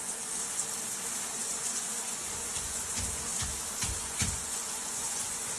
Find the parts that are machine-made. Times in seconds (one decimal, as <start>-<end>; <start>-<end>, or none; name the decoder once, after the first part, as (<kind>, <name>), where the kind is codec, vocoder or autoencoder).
0.0-0.4 (vocoder, Vocos); 1.4-3.3; 3.9-5.6